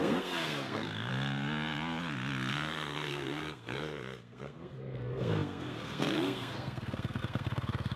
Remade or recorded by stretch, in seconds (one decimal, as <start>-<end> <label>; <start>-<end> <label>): 0.0-1.1 remade; 1.1-2.5 recorded; 2.5-8.0 remade